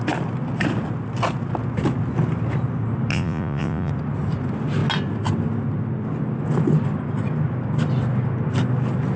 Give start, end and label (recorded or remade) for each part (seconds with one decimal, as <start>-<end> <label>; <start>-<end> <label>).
0.0-3.1 recorded; 3.1-3.9 remade; 3.9-9.2 recorded